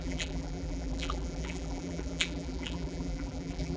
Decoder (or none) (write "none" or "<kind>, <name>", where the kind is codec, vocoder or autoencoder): vocoder, BigVGAN v2